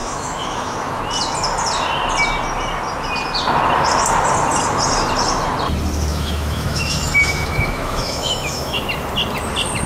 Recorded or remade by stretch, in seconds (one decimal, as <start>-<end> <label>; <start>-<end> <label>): 0.0-1.0 remade; 1.0-6.1 recorded; 6.1-8.8 remade; 8.8-9.9 recorded